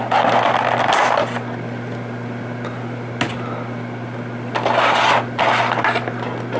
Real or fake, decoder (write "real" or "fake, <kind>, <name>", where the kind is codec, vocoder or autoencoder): real